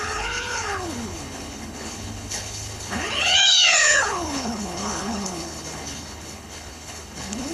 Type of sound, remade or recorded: remade